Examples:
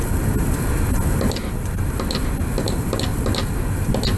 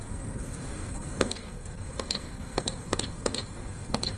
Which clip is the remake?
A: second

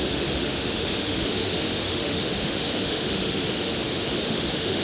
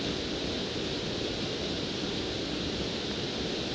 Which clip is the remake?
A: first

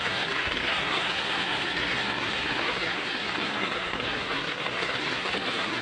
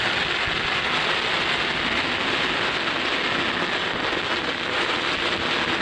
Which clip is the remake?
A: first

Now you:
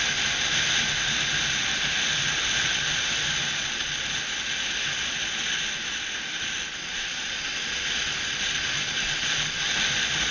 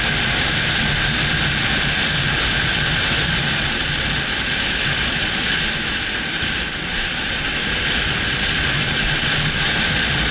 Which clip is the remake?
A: second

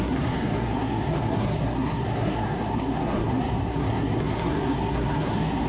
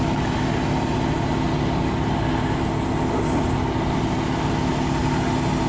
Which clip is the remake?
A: first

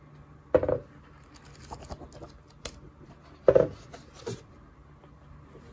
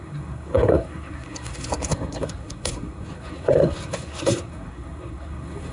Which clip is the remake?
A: second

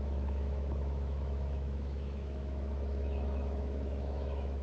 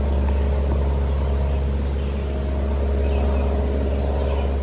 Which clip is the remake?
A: first